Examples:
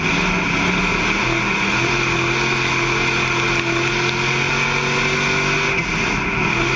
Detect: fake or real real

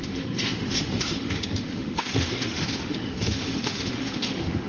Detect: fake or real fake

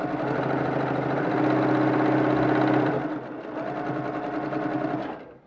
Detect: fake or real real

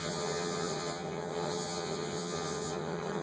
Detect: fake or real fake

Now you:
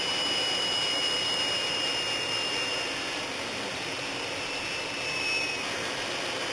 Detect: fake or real fake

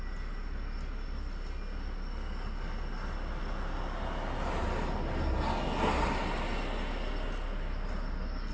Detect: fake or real real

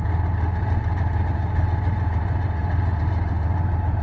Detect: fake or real fake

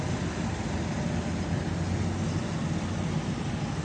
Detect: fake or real real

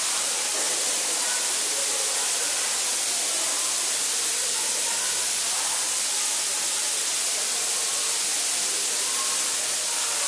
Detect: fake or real real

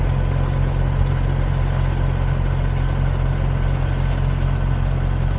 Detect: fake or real real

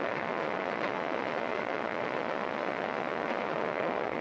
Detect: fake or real fake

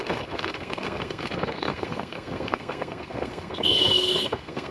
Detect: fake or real fake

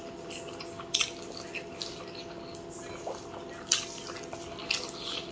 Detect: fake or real real